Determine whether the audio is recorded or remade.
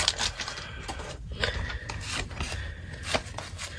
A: recorded